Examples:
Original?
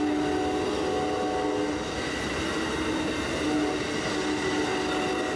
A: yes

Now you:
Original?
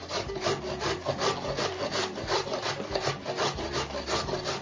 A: yes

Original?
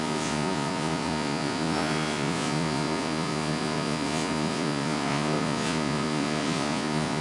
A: no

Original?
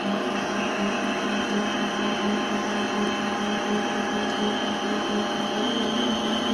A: yes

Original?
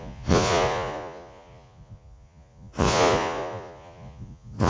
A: no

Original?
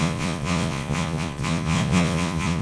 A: no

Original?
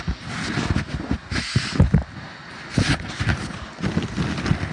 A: yes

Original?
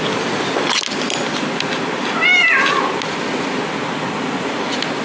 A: yes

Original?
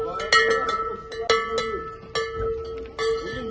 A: yes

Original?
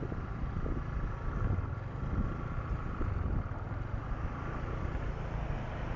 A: yes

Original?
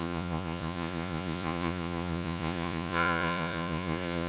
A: no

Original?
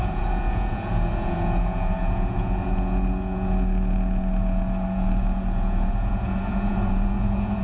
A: no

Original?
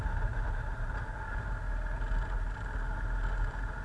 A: yes